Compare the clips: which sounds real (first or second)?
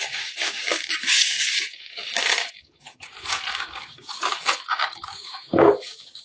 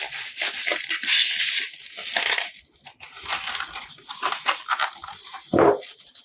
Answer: second